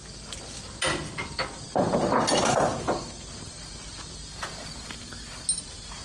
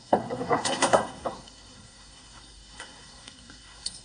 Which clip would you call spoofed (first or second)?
second